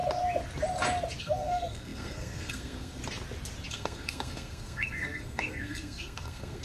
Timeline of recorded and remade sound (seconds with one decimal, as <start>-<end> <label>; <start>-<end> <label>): 0.0-1.2 recorded; 1.2-3.0 remade; 3.0-3.7 recorded; 3.7-6.6 remade